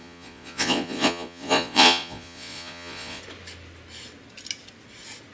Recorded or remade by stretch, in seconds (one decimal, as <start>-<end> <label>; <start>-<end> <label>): 0.0-3.2 remade; 3.2-5.3 recorded